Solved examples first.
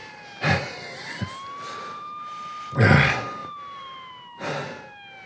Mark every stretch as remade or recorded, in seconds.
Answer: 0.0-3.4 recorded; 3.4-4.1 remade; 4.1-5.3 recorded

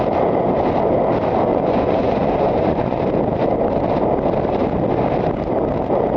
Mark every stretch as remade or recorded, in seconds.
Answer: 0.0-1.5 recorded; 1.5-3.0 remade; 3.0-6.2 recorded

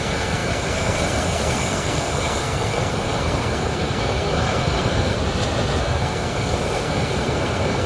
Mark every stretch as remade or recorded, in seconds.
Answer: 0.0-5.2 remade; 5.2-5.8 recorded; 5.8-7.9 remade

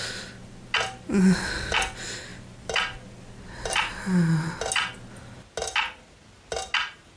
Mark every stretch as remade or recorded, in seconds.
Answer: 0.0-7.2 recorded

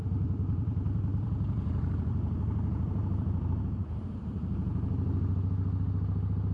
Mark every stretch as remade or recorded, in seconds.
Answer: 0.0-4.7 remade; 4.7-6.5 recorded

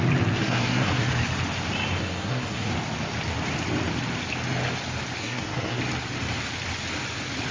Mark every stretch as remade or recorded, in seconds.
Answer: 0.0-0.4 recorded; 0.4-1.1 remade; 1.1-2.0 recorded; 2.0-2.7 remade; 2.7-5.2 recorded; 5.2-5.8 remade; 5.8-7.5 recorded